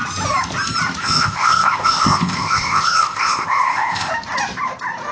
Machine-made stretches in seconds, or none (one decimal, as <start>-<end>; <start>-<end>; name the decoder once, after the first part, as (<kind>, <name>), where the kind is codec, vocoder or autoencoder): 1.0-4.1 (codec, ZipCodec)

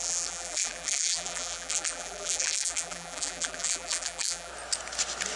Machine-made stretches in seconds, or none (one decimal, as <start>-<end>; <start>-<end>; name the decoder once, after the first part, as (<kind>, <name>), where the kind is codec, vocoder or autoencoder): 0.0-4.5 (vocoder, BigVGAN v2)

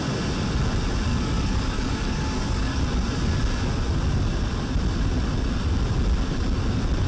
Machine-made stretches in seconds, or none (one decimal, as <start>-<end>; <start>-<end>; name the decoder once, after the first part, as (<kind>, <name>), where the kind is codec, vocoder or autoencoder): 1.1-2.8 (codec, DAC)